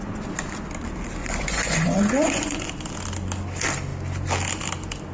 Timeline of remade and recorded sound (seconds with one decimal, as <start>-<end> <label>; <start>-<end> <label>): 0.0-1.2 recorded; 1.2-2.7 remade; 2.7-5.1 recorded